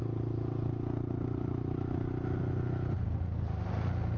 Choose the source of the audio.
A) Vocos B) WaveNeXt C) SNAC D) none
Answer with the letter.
D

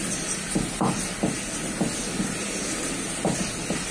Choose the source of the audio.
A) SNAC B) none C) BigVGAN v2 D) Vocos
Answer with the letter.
B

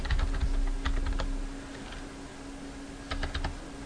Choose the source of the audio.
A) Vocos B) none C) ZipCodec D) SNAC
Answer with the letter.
B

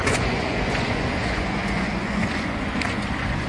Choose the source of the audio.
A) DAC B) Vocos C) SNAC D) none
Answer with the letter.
B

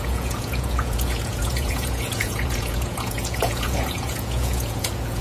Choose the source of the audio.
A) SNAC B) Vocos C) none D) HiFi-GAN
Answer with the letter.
B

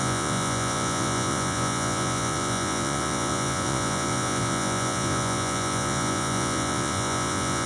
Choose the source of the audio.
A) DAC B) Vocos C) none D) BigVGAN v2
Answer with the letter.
B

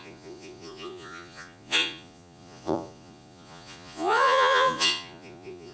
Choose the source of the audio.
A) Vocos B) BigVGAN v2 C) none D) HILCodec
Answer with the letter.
A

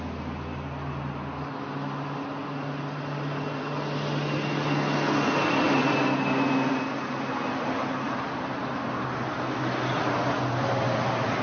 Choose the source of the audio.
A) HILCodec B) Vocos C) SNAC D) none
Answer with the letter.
D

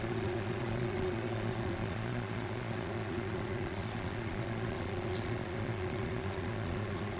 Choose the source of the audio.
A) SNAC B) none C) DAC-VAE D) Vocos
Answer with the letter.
D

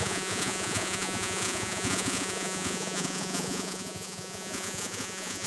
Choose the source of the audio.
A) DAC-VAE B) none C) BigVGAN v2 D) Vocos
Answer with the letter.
D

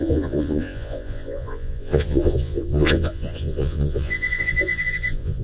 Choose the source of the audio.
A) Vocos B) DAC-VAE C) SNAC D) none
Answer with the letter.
A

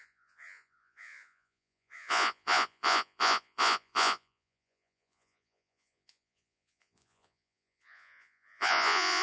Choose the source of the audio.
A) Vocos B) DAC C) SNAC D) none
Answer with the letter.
A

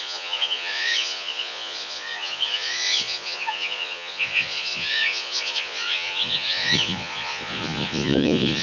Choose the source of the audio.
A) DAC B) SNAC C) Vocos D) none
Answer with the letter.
C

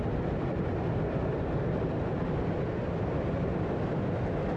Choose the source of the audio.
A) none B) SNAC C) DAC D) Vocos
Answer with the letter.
A